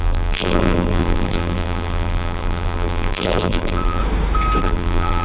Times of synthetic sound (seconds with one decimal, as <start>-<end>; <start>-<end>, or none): 0.0-4.0; 4.6-5.2